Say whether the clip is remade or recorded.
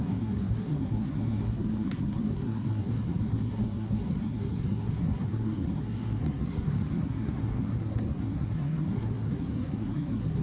remade